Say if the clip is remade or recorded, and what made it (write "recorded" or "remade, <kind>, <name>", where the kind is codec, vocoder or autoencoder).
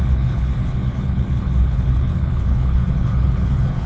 remade, codec, HILCodec